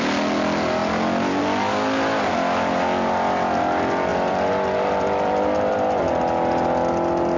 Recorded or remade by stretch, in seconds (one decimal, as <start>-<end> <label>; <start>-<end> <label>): 0.0-0.8 recorded; 0.8-1.4 remade; 1.4-4.1 recorded; 4.1-6.0 remade; 6.0-7.4 recorded